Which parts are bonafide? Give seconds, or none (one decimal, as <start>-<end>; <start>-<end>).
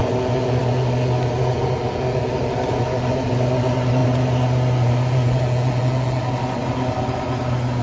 0.0-7.8